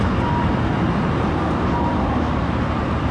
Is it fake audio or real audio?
real